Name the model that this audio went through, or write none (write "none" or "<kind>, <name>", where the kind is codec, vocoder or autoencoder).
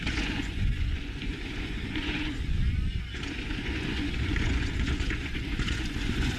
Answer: vocoder, Vocos